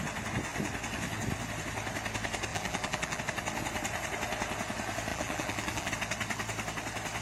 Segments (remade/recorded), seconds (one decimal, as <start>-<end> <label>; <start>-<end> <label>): 0.0-2.5 recorded; 2.5-3.2 remade; 3.2-5.1 recorded; 5.1-5.9 remade; 5.9-7.2 recorded